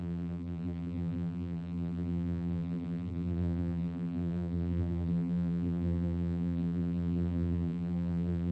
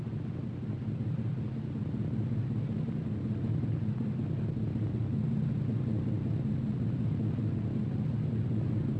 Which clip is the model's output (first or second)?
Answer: first